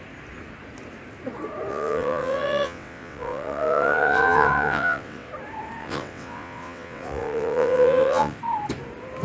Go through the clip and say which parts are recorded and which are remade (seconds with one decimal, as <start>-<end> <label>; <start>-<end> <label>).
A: 0.0-1.7 recorded; 1.7-5.3 remade; 5.3-5.8 recorded; 5.8-8.4 remade; 8.4-9.2 recorded